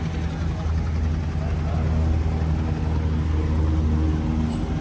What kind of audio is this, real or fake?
real